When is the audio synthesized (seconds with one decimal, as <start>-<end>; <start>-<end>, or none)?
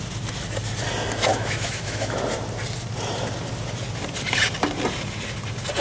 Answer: 1.3-2.2